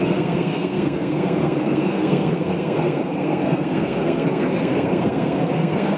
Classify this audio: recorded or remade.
remade